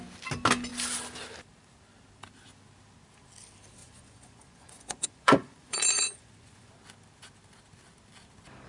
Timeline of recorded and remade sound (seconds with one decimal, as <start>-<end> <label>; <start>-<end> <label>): 0.0-3.8 recorded; 3.8-6.7 remade; 6.7-8.7 recorded